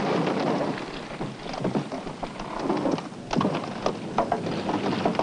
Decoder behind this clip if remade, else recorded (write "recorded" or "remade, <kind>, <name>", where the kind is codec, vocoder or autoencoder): recorded